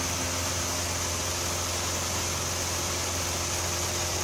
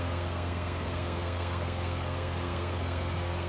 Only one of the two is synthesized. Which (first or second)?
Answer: second